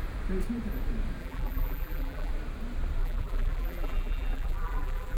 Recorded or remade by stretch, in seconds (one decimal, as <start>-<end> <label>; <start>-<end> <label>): 0.0-1.2 recorded; 1.2-2.3 remade; 2.3-3.0 recorded; 3.0-5.2 remade